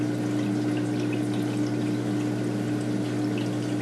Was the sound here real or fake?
real